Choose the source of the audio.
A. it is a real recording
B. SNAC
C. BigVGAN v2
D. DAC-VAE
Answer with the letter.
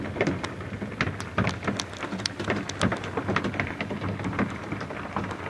A